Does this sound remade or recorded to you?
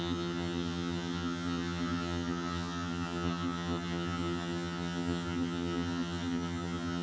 remade